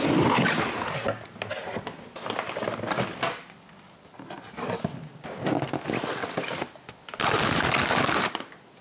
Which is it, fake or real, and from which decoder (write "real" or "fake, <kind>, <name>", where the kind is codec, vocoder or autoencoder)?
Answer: real